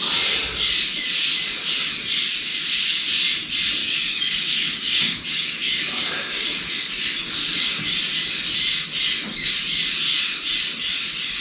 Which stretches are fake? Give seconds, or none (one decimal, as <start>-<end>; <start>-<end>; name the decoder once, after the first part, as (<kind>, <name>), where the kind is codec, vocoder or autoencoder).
2.5-3.0 (codec, DAC); 3.8-6.9; 7.4-8.0